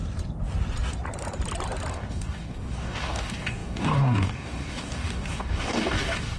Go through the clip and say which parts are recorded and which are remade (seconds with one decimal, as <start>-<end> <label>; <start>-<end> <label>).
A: 0.0-1.9 recorded; 1.9-6.4 remade